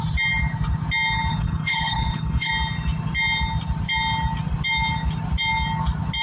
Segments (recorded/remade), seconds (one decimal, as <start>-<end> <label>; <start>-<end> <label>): 0.0-1.3 recorded; 1.3-2.5 remade; 2.5-6.2 recorded